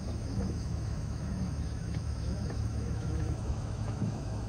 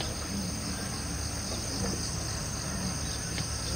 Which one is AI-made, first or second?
first